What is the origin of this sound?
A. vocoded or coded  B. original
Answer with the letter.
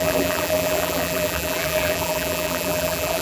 A